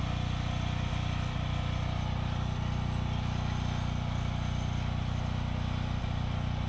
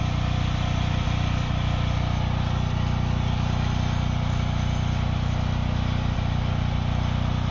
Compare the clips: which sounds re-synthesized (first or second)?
second